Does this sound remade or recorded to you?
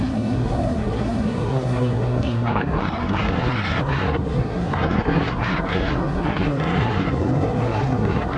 remade